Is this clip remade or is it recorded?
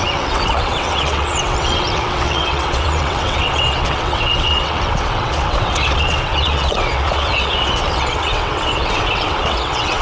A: remade